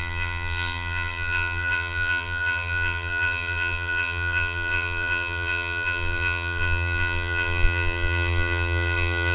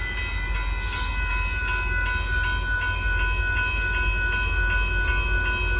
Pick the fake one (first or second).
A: first